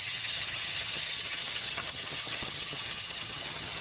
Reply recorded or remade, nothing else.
remade